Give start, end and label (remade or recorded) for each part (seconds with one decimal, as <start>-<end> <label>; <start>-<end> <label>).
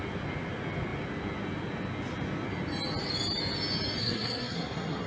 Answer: 0.0-4.0 recorded; 4.0-5.1 remade